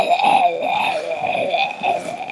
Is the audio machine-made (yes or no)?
no